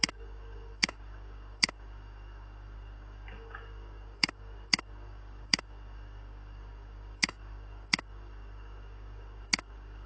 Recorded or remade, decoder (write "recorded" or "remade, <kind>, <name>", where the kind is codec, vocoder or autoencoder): remade, codec, DAC